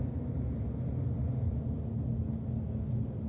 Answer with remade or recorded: recorded